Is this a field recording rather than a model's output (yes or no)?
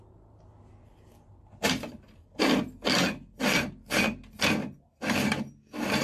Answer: yes